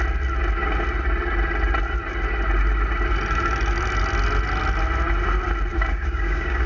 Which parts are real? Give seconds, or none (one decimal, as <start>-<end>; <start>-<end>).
0.0-5.7